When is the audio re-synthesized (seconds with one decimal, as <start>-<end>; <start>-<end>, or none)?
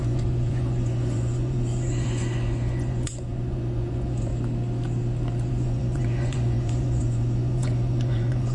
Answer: 0.0-4.3; 5.5-8.5